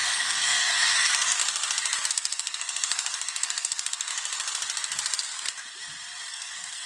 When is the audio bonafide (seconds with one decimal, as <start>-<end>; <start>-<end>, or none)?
1.4-2.1; 4.1-6.3